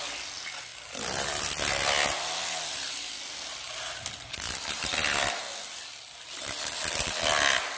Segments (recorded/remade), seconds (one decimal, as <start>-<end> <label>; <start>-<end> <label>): 0.0-7.8 recorded